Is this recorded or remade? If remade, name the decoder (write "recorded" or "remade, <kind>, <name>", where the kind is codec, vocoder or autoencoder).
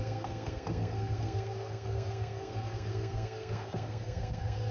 remade, codec, SNAC